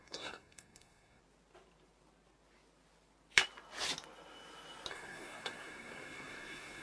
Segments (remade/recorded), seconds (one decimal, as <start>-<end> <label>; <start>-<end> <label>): 0.0-1.2 remade; 1.2-4.9 recorded; 4.9-6.8 remade